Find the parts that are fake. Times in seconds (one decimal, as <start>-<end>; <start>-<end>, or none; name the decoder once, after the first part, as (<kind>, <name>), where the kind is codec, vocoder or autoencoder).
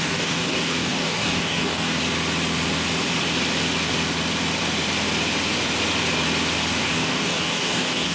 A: 0.0-2.0 (codec, DAC); 6.8-8.1